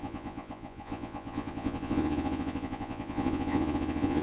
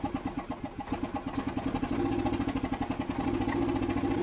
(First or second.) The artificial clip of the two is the first